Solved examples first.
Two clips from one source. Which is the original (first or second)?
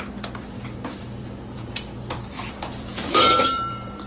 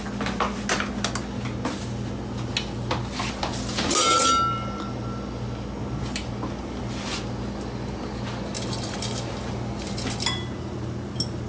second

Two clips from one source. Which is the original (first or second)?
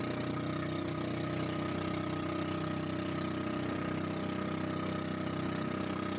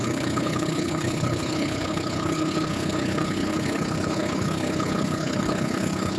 first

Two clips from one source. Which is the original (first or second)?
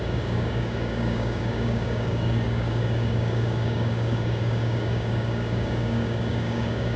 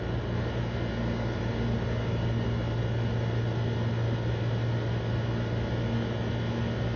second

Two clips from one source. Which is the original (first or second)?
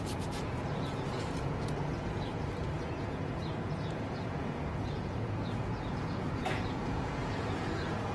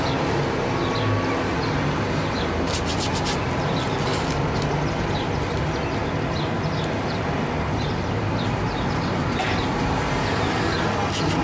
second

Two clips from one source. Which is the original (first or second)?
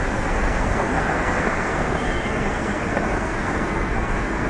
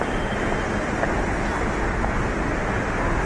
second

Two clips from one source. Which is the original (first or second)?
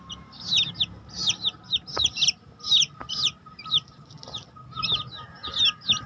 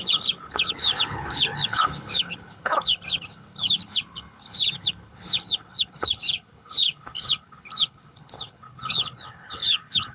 first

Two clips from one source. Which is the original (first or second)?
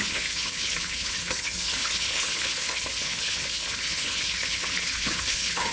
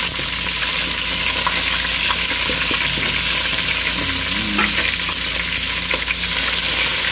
second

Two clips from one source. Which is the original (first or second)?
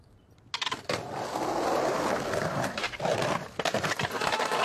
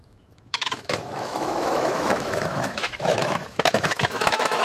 first